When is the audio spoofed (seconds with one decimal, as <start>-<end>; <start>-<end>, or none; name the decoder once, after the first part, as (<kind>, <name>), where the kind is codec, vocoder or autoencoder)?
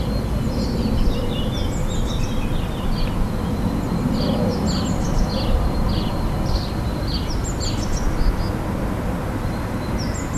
none